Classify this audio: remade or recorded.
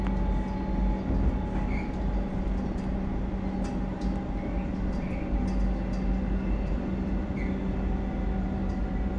recorded